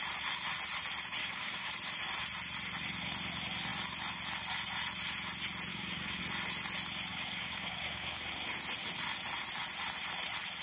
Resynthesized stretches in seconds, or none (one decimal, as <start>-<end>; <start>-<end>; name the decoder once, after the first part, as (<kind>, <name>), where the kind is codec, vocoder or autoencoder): 1.2-1.7 (codec, DAC); 5.7-6.2; 7.1-8.3